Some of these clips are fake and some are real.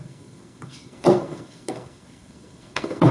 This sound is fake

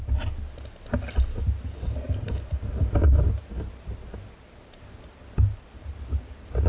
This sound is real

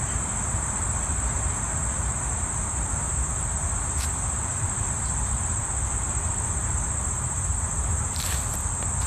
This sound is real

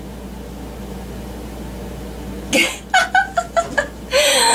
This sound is real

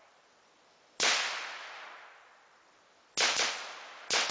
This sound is real